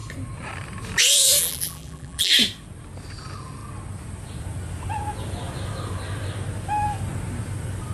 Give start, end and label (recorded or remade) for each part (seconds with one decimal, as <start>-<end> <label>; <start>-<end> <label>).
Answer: 0.0-1.4 recorded; 1.4-2.3 remade; 2.3-7.9 recorded